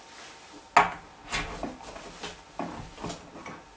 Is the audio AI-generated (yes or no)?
no